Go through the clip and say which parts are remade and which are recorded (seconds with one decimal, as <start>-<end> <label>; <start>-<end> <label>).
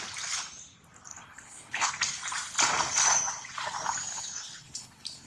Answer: 0.0-1.1 recorded; 1.1-1.9 remade; 1.9-4.1 recorded; 4.1-5.3 remade